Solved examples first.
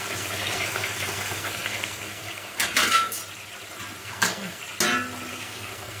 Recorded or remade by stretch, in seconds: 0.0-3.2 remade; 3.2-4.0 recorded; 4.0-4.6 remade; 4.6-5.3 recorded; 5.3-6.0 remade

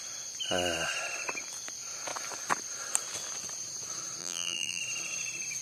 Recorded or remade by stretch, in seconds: 0.0-4.2 recorded; 4.2-4.8 remade; 4.8-5.6 recorded

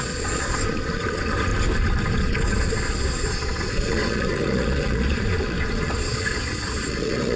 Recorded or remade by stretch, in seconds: 0.0-1.5 remade; 1.5-2.1 recorded; 2.1-7.4 remade

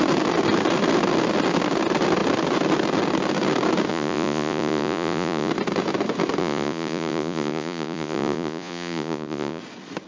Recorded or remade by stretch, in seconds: 0.0-3.9 recorded; 3.9-5.5 remade; 5.5-6.4 recorded; 6.4-9.6 remade; 9.6-10.1 recorded

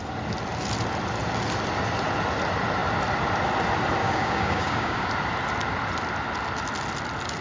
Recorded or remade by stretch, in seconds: 0.0-4.0 recorded; 4.0-5.1 remade; 5.1-7.4 recorded